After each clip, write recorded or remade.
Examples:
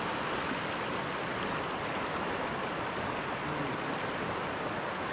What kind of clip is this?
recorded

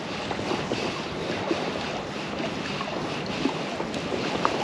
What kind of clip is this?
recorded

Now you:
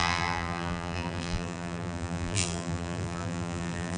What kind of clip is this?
remade